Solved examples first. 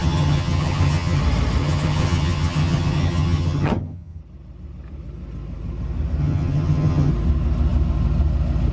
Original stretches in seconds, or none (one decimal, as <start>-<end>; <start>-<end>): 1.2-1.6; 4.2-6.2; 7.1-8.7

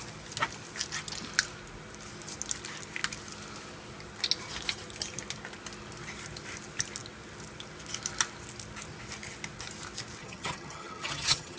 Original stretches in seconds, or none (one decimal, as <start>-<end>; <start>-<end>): 0.0-10.2

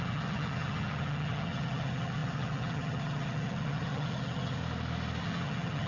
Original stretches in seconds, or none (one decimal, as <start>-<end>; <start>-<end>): 4.6-5.2

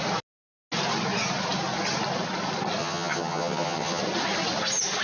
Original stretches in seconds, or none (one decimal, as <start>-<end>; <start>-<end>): 0.0-2.8; 4.0-5.0

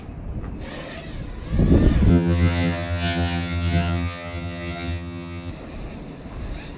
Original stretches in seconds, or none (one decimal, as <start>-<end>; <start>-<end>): 0.0-2.1; 5.5-6.8